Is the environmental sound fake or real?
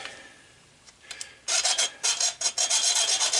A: real